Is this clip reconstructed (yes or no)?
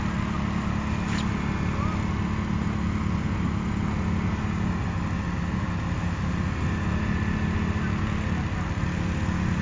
no